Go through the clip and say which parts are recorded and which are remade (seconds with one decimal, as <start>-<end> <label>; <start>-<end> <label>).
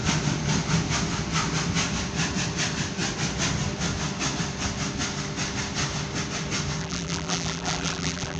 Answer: 0.0-6.8 recorded; 6.8-8.4 remade